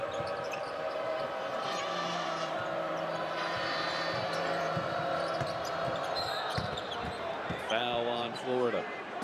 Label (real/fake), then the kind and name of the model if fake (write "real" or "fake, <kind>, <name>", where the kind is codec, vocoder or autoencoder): fake, vocoder, BigVGAN v2